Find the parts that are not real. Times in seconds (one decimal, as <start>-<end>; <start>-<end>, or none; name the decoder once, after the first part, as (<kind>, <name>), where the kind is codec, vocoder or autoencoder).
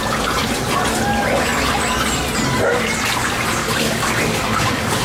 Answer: 3.6-5.0 (codec, DAC)